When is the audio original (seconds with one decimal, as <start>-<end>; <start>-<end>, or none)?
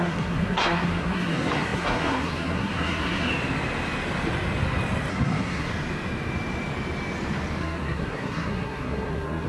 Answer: 3.3-5.1; 5.7-7.6